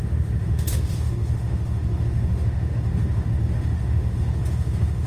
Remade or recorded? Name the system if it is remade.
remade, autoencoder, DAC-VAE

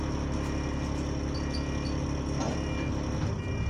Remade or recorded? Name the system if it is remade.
recorded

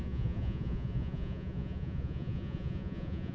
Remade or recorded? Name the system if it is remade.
remade, vocoder, Vocos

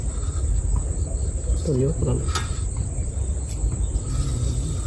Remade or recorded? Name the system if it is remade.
recorded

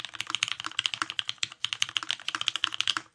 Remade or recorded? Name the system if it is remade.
recorded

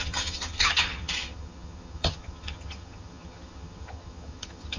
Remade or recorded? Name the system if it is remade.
remade, vocoder, HiFi-GAN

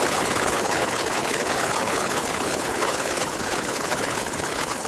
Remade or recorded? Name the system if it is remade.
remade, codec, HILCodec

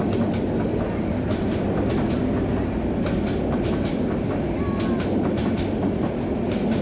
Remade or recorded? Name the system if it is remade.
recorded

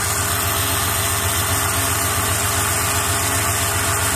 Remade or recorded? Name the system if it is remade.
recorded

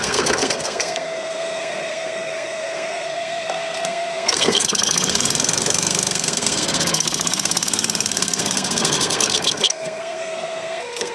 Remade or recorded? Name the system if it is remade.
remade, codec, SNAC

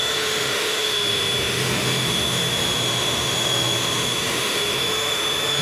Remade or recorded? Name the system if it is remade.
remade, autoencoder, DAC-VAE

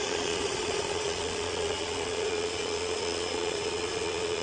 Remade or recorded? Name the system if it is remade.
remade, vocoder, Vocos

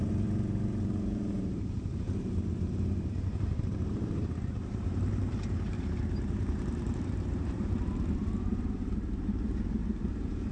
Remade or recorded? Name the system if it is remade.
remade, vocoder, BigVGAN v2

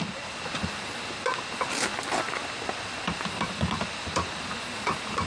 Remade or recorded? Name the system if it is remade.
recorded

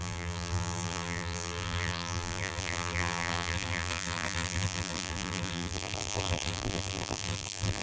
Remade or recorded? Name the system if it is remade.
remade, vocoder, BigVGAN v2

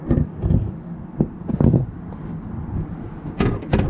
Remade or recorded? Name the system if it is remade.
recorded